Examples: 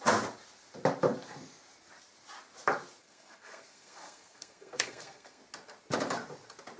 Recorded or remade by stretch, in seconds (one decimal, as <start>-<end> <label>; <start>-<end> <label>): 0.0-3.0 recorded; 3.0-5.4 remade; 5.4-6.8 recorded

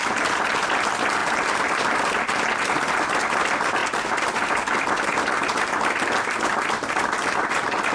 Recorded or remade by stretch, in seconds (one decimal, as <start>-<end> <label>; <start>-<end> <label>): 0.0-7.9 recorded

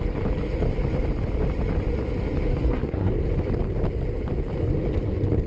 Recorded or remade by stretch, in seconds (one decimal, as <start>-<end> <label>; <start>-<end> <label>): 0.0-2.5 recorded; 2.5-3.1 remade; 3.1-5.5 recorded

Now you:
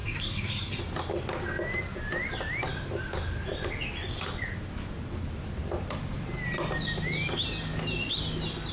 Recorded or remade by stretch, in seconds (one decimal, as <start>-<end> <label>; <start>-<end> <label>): 0.0-0.8 remade; 0.8-8.7 recorded